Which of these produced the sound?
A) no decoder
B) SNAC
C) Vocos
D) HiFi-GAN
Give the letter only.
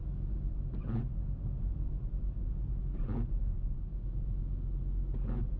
A